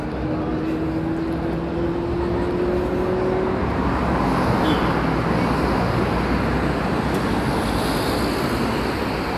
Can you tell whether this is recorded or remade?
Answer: recorded